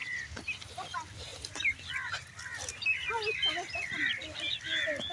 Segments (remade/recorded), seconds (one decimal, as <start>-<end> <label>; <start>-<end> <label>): 0.0-5.1 recorded